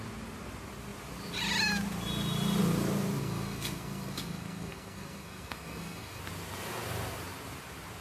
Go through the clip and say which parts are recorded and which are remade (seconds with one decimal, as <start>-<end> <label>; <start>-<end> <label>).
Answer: 0.0-3.2 recorded; 3.2-6.2 remade; 6.2-8.0 recorded